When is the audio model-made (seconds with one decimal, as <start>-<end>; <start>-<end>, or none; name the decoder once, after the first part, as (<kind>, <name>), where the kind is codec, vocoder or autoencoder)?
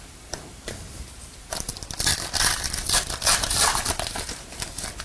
0.0-1.7 (vocoder, BigVGAN v2); 3.4-5.0